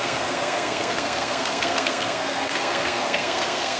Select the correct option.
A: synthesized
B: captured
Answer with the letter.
A